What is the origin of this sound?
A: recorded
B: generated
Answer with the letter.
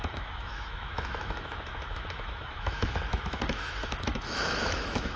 B